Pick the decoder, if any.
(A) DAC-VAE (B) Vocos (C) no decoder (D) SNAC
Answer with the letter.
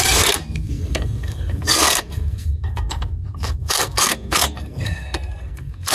D